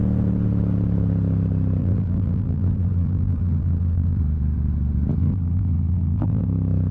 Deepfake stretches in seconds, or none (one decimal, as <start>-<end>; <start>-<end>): 1.8-4.2; 5.2-6.4